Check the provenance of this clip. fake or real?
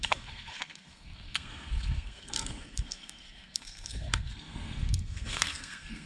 fake